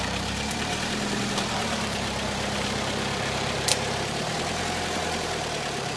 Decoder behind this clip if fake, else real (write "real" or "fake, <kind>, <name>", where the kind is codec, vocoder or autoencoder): fake, vocoder, BigVGAN v2